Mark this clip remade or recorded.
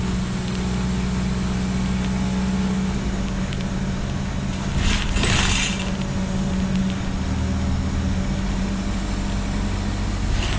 recorded